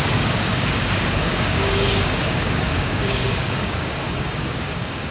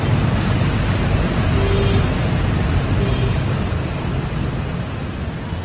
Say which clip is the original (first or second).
second